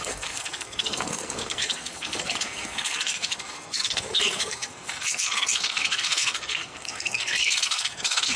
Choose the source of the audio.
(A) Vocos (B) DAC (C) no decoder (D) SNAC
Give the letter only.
D